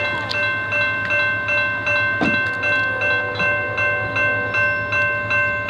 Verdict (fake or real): real